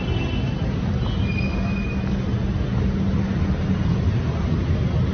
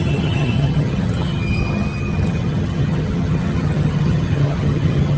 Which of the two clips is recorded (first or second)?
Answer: first